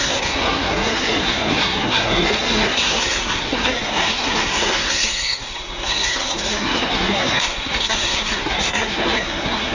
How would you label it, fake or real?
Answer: fake